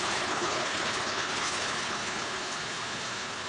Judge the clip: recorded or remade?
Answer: remade